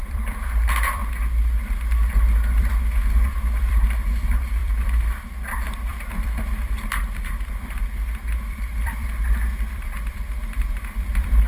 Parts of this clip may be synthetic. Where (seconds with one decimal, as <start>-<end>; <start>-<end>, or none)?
0.0-1.0; 3.4-11.5

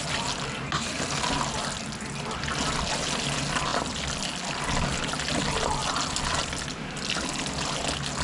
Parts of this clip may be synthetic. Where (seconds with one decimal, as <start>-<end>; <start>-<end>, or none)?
none

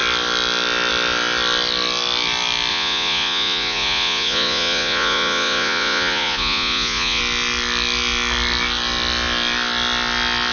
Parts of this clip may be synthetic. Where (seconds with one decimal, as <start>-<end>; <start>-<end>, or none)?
2.7-7.2

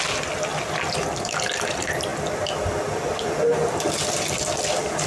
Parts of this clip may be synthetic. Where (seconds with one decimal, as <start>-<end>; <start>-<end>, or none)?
none